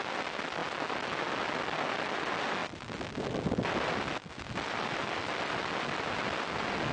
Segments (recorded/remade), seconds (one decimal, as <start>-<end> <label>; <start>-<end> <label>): 0.0-6.9 recorded